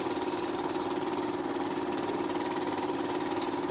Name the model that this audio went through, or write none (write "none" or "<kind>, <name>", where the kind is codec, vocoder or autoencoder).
vocoder, BigVGAN v2